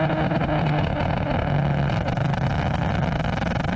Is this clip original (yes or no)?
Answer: yes